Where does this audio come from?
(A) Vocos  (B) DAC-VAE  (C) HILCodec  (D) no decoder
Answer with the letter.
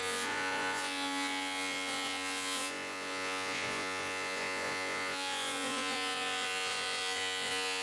A